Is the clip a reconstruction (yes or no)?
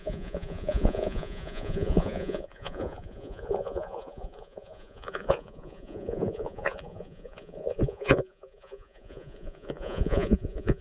yes